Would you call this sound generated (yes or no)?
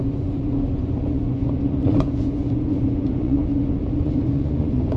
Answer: yes